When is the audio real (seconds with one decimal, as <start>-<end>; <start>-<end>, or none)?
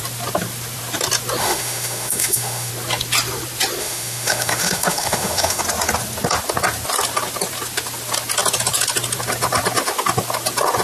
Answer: 0.0-1.4; 2.7-3.8; 5.6-10.8